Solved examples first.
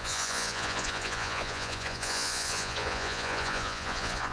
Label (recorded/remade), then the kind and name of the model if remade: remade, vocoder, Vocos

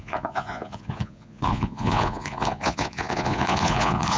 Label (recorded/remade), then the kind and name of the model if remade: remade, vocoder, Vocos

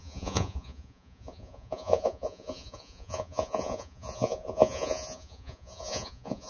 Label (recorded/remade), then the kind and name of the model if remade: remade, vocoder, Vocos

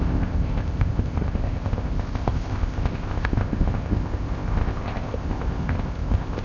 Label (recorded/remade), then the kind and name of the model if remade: remade, codec, ZipCodec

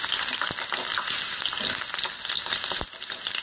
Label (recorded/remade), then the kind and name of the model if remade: recorded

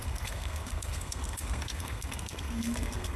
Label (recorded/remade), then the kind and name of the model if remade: remade, codec, SNAC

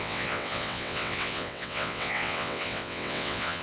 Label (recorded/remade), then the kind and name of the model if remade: remade, vocoder, WaveNeXt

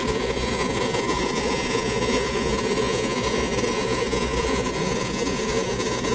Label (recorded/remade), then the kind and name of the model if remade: remade, vocoder, Vocos